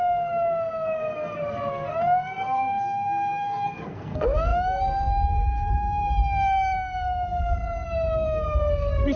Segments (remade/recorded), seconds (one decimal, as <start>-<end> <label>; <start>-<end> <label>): 0.0-9.2 remade